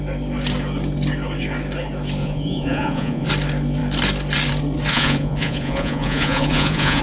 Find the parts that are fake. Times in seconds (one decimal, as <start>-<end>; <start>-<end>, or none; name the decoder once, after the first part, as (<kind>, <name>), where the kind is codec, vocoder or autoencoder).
2.2-3.3 (vocoder, Vocos); 4.9-7.0